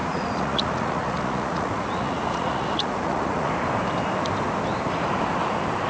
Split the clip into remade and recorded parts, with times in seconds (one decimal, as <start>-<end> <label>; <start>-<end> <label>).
0.0-3.5 remade; 3.5-5.9 recorded